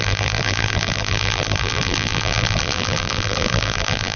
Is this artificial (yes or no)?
yes